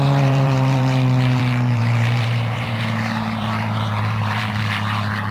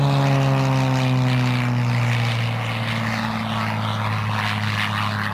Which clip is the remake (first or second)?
first